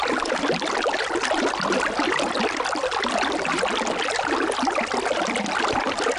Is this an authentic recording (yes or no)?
yes